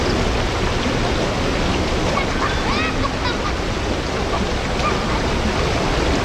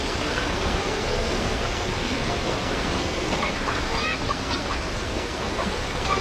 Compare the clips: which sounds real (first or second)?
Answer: first